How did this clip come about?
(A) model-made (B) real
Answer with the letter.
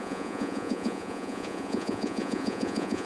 A